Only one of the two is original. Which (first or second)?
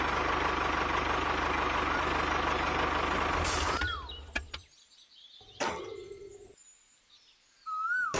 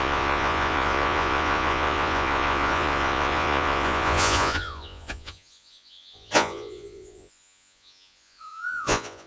first